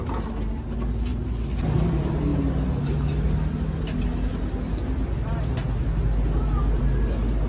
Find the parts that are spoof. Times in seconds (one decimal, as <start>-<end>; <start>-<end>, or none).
none